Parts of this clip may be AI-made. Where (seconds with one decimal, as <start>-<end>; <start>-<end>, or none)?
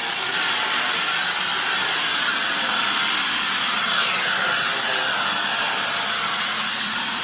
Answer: 6.3-7.2